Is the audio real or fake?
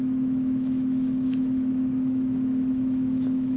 fake